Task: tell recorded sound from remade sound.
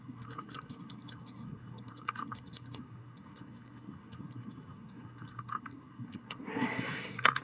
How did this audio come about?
remade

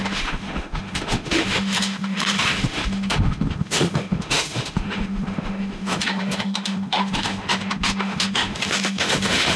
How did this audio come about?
remade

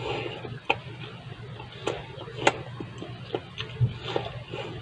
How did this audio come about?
recorded